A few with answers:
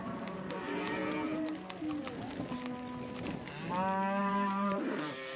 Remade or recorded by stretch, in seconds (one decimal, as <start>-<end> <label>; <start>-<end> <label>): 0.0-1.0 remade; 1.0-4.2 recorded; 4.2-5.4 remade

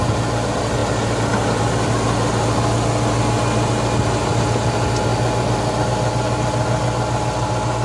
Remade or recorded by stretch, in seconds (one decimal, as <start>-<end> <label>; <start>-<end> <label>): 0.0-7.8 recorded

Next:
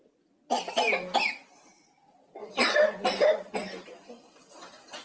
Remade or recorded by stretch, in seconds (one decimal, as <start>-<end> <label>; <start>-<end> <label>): 0.0-1.7 recorded; 1.7-5.0 remade

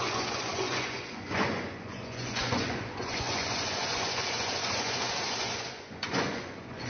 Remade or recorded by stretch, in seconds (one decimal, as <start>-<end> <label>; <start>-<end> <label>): 0.0-6.9 remade